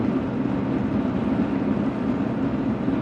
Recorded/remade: recorded